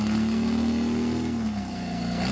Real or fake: fake